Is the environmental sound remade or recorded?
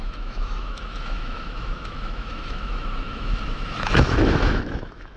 remade